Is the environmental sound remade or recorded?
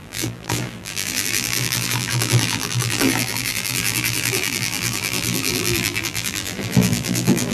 remade